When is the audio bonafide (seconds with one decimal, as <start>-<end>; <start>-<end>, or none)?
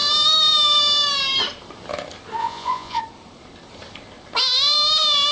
0.0-2.4; 3.0-5.3